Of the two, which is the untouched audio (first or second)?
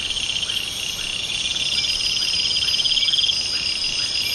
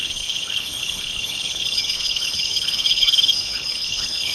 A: first